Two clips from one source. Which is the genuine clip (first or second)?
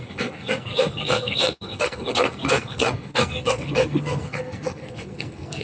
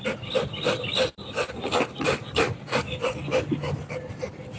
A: second